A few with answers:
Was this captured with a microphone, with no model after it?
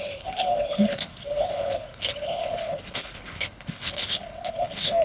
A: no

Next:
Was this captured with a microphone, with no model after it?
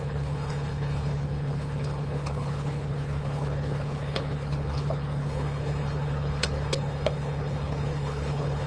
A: no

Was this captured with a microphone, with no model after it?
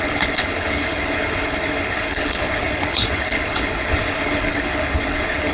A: no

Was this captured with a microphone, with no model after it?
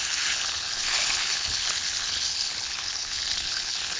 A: no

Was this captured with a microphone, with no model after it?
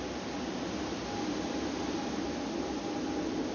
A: yes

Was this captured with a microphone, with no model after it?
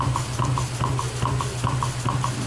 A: yes